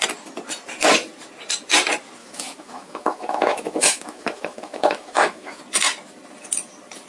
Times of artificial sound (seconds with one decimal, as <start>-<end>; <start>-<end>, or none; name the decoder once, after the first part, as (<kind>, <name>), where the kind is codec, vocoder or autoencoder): 2.2-5.6 (autoencoder, DAC-VAE)